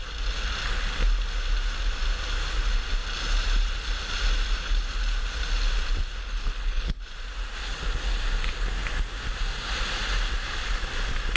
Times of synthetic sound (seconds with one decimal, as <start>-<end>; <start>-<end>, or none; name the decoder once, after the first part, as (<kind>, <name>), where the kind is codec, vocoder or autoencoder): 6.2-7.0 (codec, HILCodec)